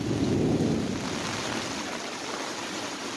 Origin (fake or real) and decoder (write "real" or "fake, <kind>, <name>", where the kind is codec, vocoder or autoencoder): real